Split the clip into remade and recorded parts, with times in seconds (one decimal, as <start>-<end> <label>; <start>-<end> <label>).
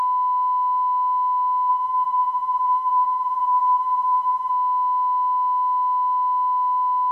0.0-1.7 recorded; 1.7-4.5 remade; 4.5-7.1 recorded